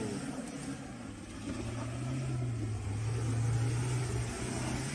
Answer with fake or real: real